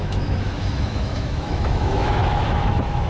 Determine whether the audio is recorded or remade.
remade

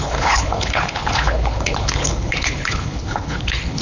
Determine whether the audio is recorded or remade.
remade